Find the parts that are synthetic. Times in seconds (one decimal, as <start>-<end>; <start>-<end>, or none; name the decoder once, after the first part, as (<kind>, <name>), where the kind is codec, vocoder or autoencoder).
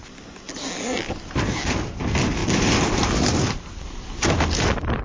none